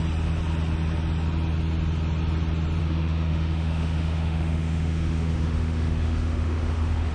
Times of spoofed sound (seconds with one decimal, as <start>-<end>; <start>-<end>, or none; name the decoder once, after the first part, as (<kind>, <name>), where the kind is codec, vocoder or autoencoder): 2.8-7.1 (autoencoder, DAC-VAE)